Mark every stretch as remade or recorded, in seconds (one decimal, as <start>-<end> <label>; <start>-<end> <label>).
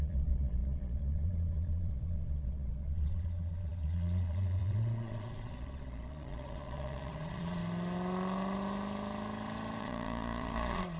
0.0-7.6 remade; 7.6-9.8 recorded; 9.8-11.0 remade